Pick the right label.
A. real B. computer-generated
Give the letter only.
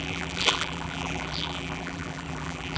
B